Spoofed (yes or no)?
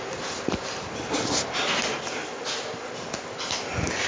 no